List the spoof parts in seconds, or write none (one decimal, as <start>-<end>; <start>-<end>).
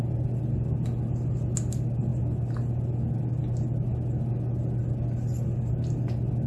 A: none